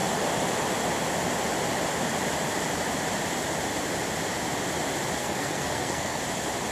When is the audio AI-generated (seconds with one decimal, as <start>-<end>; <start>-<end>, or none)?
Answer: 5.2-6.2